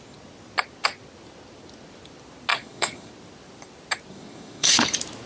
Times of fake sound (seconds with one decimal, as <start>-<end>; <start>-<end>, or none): 2.5-3.1; 4.1-4.7